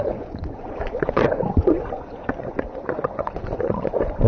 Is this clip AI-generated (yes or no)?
yes